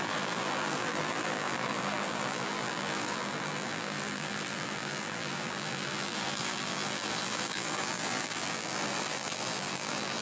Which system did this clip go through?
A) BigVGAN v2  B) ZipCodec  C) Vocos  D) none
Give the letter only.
A